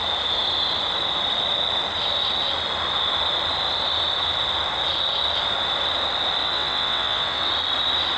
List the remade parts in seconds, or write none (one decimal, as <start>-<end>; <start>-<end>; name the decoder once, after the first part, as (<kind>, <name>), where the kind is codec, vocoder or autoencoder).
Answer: 6.4-7.5 (vocoder, WaveNeXt)